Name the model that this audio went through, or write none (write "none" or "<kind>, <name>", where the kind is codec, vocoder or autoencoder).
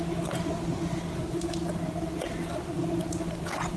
none